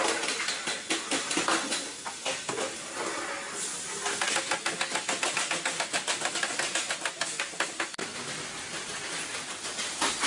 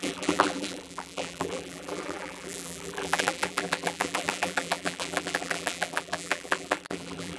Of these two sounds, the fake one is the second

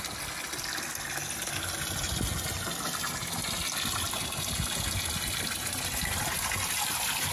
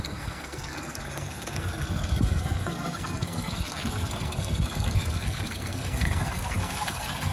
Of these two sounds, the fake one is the second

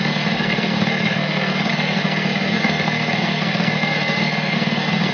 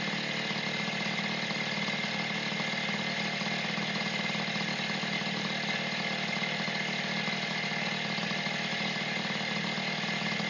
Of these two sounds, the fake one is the first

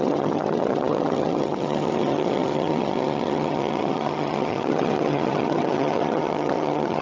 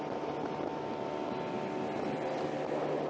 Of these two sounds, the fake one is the first